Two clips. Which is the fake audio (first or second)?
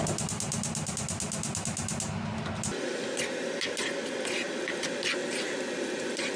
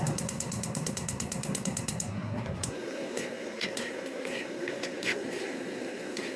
second